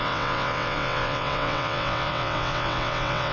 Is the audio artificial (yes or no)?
yes